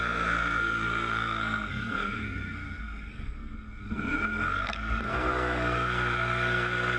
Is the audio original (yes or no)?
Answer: no